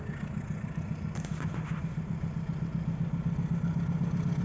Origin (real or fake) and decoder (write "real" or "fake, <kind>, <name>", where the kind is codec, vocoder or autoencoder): real